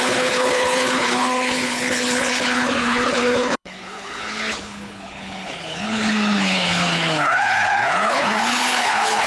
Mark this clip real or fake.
fake